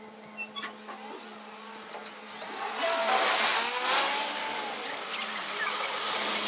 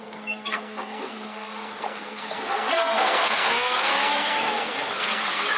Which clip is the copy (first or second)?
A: second